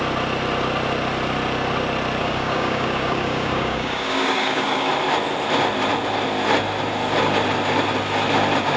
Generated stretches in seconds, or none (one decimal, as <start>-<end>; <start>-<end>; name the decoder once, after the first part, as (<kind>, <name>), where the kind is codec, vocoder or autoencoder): 2.2-4.9 (codec, DAC)